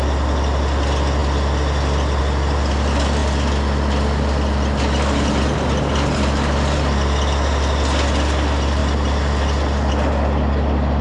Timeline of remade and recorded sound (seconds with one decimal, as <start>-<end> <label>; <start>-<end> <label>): 0.0-11.0 recorded